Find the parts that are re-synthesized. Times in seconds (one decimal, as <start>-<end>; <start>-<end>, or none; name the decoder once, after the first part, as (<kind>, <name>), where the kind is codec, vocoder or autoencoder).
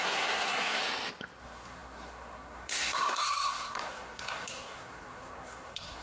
0.0-0.8 (codec, SNAC); 1.4-6.0